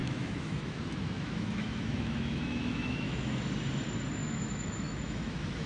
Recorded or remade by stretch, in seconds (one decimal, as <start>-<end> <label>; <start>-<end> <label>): 0.0-3.4 remade; 3.4-4.2 recorded; 4.2-5.7 remade